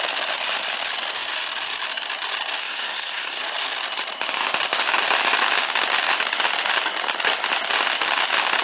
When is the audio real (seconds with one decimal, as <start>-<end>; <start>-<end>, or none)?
0.0-2.6; 3.4-8.6